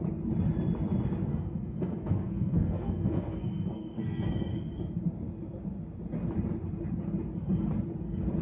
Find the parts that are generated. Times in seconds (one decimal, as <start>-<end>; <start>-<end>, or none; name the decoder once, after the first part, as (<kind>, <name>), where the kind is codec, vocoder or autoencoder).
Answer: 1.3-4.3 (codec, SNAC)